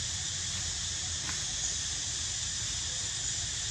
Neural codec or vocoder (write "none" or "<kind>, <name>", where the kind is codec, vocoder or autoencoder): none